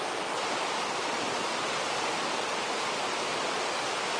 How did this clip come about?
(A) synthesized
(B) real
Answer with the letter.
B